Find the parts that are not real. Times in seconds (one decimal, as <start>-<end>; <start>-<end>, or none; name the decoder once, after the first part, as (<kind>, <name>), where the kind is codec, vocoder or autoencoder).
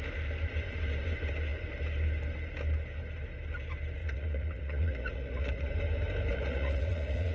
4.0-5.7 (vocoder, Vocos); 6.3-7.3